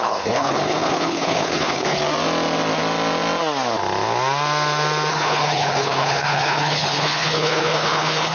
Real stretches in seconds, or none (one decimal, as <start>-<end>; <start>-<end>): 2.0-5.1